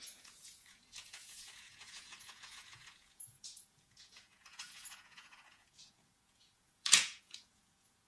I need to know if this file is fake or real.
fake